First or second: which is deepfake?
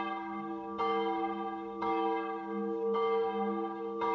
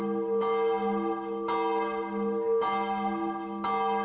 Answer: first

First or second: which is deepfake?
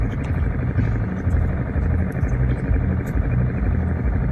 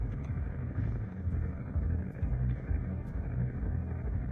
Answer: second